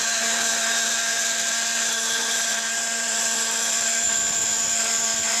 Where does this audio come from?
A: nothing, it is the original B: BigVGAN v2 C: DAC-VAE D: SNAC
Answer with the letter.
B